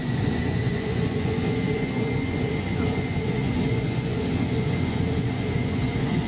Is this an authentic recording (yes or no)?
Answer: no